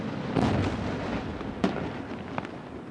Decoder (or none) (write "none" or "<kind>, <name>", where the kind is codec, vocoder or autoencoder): none